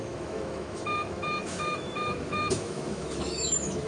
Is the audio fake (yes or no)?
yes